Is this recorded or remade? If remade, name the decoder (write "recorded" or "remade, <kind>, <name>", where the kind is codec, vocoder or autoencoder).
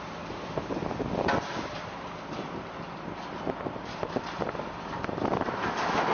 recorded